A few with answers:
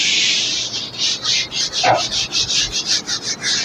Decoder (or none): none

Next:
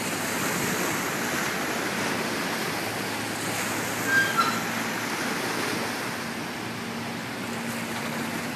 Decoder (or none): none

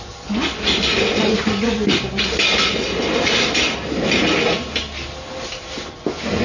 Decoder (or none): none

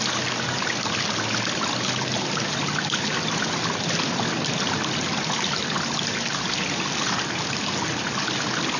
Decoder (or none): none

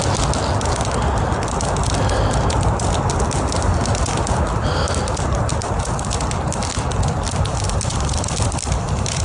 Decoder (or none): none